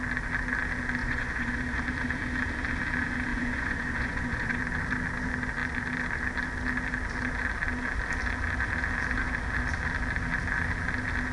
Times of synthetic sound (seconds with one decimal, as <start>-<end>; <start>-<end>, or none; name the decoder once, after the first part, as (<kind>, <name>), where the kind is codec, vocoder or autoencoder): 1.0-1.6 (vocoder, Vocos); 3.3-4.6